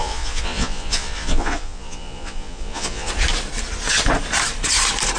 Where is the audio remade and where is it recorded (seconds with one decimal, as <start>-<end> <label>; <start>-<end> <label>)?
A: 0.0-3.1 remade; 3.1-5.2 recorded